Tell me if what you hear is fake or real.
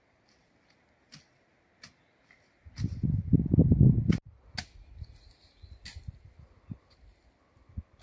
real